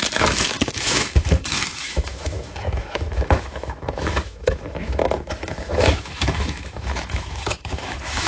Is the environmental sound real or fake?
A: fake